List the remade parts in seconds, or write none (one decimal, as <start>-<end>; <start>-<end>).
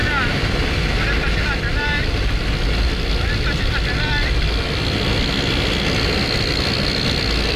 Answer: none